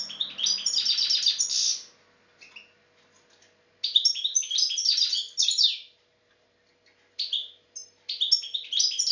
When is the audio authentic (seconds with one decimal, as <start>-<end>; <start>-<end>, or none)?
0.0-9.1